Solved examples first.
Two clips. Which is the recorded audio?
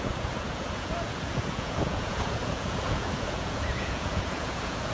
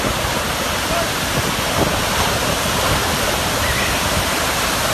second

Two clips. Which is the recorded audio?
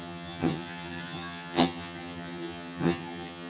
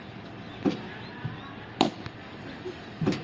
second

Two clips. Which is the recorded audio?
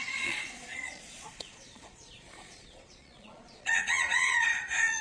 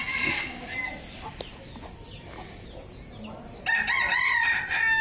second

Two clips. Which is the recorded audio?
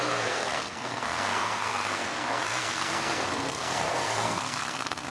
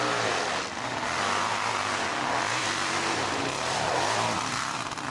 second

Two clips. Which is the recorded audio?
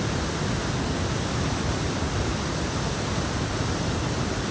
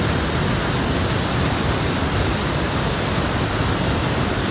second